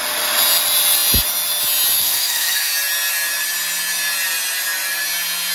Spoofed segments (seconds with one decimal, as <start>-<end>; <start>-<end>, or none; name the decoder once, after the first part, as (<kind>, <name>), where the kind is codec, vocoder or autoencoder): 2.0-2.7 (codec, SNAC)